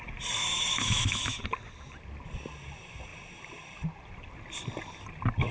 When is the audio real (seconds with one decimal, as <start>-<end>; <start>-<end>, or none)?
0.0-0.4; 1.4-5.5